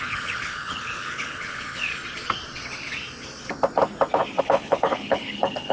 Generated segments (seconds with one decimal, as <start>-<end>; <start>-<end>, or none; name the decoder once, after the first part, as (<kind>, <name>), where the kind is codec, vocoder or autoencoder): 0.0-1.9 (codec, HILCodec); 4.4-5.7